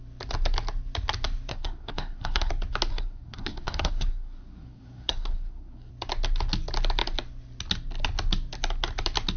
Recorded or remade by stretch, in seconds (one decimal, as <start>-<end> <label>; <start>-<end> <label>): 0.0-1.5 recorded; 1.5-2.5 remade; 2.5-2.9 recorded; 2.9-5.9 remade; 5.9-9.4 recorded